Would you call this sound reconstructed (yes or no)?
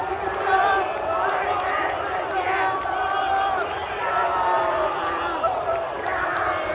yes